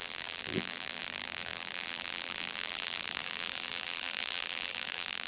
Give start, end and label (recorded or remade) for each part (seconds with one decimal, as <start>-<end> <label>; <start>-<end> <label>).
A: 0.0-5.3 remade